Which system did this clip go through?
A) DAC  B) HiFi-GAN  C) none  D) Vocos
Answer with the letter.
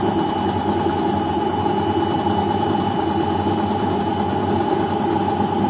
C